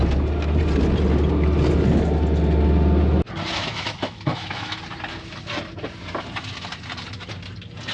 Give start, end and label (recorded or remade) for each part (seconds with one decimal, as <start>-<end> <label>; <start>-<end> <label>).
0.0-3.6 recorded; 3.6-4.8 remade; 4.8-7.9 recorded